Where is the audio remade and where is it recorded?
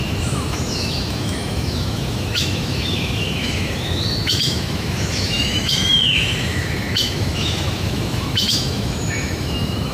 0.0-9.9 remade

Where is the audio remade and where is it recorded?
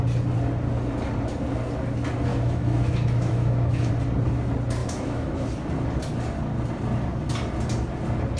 0.0-2.3 recorded; 2.3-3.9 remade; 3.9-4.8 recorded; 4.8-5.5 remade; 5.5-8.4 recorded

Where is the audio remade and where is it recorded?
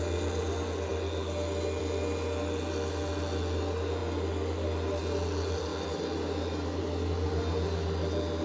0.0-8.4 recorded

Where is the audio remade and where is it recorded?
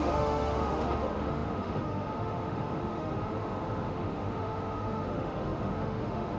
0.0-6.4 remade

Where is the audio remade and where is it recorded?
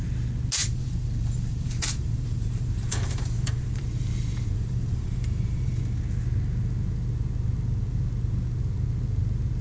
0.0-0.6 recorded; 0.6-5.8 remade; 5.8-9.6 recorded